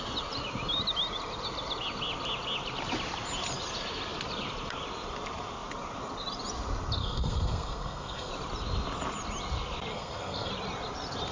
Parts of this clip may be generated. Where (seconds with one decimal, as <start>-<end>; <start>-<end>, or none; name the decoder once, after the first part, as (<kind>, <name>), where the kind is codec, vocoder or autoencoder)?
7.0-8.3 (codec, SNAC); 9.9-10.5